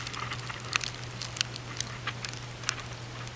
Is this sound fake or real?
real